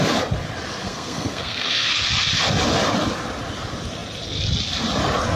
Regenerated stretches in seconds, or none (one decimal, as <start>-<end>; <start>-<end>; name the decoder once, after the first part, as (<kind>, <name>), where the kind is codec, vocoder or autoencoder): 0.8-1.9 (codec, SNAC)